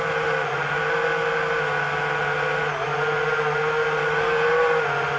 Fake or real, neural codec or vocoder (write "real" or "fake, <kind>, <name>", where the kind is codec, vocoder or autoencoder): real